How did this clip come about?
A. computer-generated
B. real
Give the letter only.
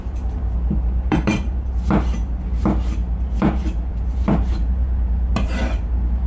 A